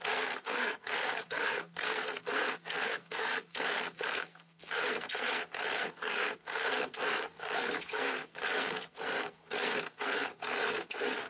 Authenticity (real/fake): fake